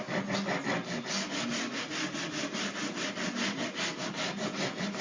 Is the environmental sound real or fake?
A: real